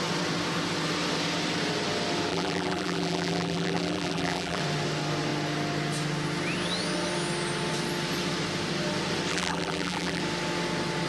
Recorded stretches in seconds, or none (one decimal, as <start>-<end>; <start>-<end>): 0.0-2.3; 4.6-9.3; 10.2-11.1